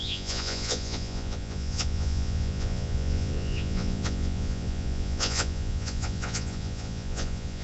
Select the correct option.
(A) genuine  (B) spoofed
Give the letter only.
B